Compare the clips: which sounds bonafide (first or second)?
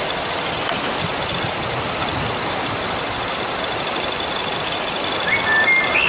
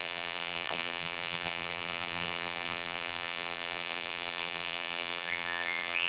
first